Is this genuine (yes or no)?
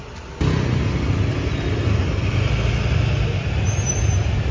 yes